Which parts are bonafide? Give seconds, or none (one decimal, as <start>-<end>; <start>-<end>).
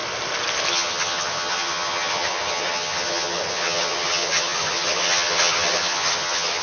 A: 0.0-0.7